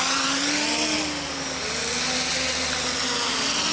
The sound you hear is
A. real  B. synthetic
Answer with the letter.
A